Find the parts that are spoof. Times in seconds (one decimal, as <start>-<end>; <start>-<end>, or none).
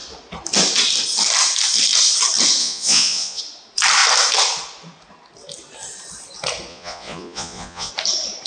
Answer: 2.6-3.4; 6.7-7.9